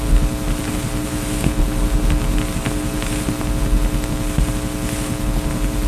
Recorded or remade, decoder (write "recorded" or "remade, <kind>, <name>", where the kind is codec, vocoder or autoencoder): recorded